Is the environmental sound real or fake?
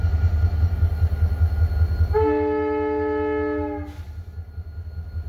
real